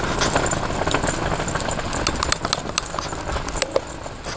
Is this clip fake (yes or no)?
no